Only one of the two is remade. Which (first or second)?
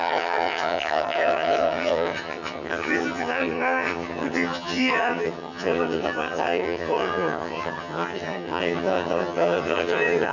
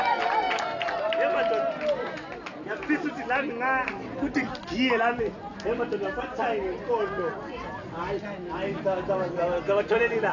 first